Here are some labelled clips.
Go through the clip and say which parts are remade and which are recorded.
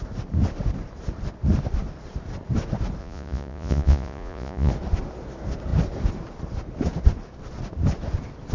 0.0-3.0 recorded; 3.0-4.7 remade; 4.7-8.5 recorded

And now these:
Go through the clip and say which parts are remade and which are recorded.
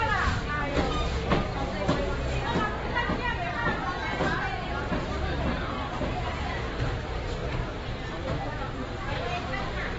0.0-1.5 remade; 1.5-6.7 recorded; 6.7-10.0 remade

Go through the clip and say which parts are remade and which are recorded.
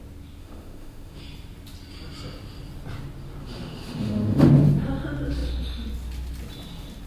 0.0-0.4 recorded; 0.4-1.2 remade; 1.2-3.4 recorded; 3.4-4.5 remade; 4.5-7.1 recorded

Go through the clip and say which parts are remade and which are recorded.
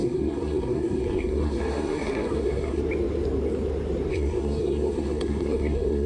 0.0-2.8 remade; 2.8-4.1 recorded; 4.1-6.1 remade